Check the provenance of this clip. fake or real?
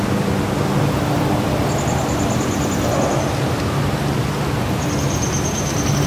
real